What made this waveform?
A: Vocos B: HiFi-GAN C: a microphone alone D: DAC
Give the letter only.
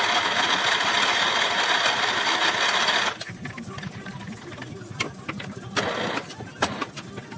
C